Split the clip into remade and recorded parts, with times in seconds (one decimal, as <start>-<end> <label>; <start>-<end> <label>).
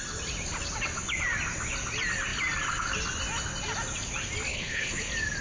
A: 0.0-4.5 recorded; 4.5-5.0 remade; 5.0-5.4 recorded